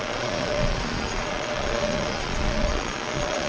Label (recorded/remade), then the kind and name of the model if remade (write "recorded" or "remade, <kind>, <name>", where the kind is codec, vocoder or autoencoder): remade, vocoder, Vocos